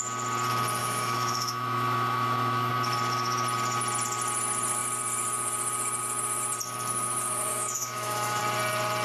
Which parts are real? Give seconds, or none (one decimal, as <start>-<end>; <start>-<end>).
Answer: 0.0-0.8; 2.7-7.5; 8.4-9.0